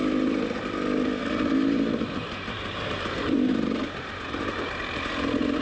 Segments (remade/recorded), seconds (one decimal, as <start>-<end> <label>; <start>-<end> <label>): 0.0-1.2 recorded; 1.2-4.6 remade; 4.6-5.6 recorded